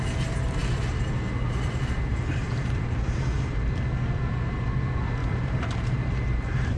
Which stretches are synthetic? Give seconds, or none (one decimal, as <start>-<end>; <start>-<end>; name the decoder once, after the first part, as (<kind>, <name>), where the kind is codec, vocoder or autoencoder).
2.1-3.7 (vocoder, BigVGAN v2); 5.2-6.8